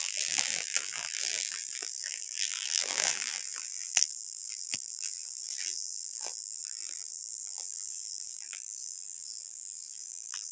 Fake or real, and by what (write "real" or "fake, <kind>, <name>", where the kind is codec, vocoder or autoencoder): fake, vocoder, BigVGAN v2